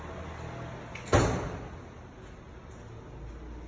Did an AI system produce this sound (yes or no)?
no